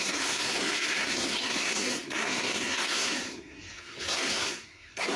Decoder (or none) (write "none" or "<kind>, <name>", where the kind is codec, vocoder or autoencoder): codec, SNAC